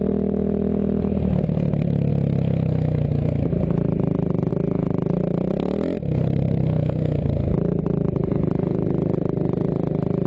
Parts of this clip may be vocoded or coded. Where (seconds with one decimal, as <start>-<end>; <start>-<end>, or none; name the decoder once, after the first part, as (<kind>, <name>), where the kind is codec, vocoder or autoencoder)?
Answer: none